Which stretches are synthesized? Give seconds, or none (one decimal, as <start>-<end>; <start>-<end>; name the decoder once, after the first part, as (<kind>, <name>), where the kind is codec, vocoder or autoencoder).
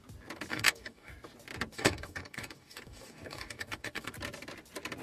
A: 0.5-1.1 (codec, DAC); 1.7-4.1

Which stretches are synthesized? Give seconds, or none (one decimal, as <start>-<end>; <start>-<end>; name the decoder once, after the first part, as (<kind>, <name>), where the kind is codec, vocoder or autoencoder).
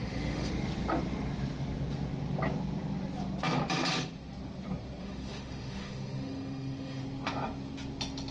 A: 0.0-0.5 (autoencoder, DAC-VAE); 5.0-7.0